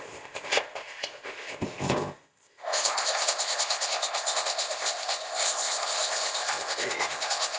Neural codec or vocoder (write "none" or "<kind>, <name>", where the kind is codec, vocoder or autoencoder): codec, ZipCodec